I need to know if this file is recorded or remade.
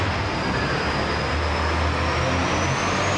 recorded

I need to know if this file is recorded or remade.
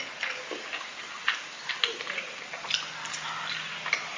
recorded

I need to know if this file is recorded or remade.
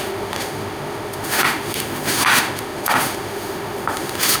remade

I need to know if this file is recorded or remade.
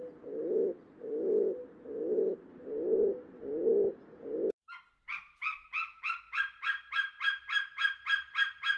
recorded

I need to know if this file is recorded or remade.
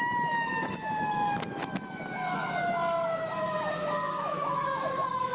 remade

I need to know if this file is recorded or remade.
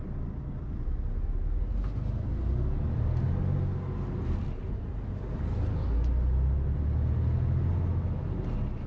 recorded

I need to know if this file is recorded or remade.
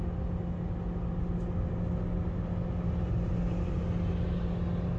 recorded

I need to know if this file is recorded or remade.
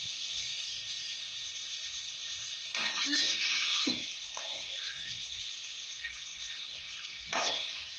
remade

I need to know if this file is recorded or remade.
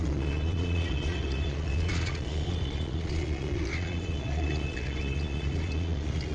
remade